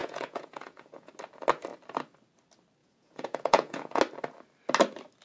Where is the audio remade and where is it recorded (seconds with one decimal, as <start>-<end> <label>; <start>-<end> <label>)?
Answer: 0.0-1.1 remade; 1.1-2.8 recorded; 2.8-4.0 remade; 4.0-5.2 recorded